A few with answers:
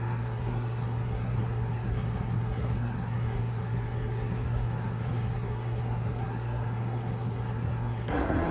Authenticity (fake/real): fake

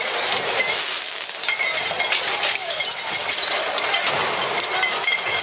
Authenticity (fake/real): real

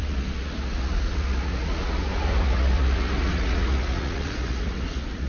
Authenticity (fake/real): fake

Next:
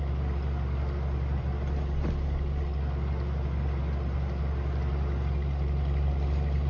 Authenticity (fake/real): real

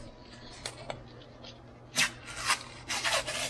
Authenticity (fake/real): real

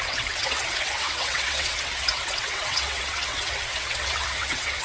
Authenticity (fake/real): fake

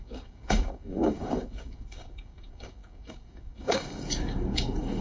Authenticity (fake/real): fake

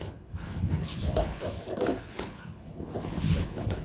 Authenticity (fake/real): fake